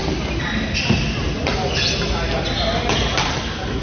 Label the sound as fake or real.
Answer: real